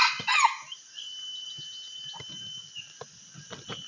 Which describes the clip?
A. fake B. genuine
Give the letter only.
B